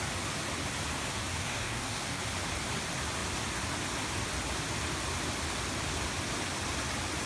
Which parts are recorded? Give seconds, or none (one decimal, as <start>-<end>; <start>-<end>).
0.0-1.3; 2.2-7.3